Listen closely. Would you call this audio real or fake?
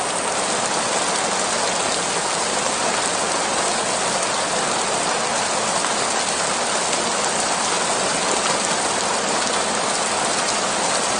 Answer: real